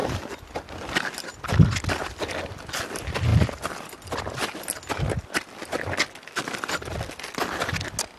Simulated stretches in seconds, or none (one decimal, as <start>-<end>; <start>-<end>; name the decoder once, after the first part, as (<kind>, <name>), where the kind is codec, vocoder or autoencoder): 0.0-1.1 (vocoder, BigVGAN v2)